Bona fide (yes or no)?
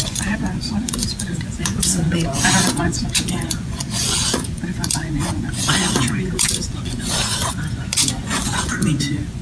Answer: no